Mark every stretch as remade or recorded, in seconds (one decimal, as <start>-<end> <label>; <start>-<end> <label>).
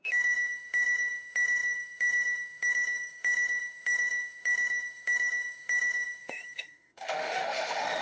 0.0-8.0 remade